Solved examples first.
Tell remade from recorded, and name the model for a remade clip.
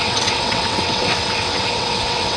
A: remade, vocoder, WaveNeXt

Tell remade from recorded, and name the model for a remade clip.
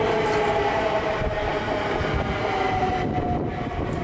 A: recorded